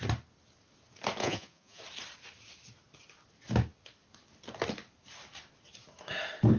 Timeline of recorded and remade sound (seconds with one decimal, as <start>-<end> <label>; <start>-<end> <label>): 0.0-1.2 recorded; 1.2-1.8 remade; 1.8-6.6 recorded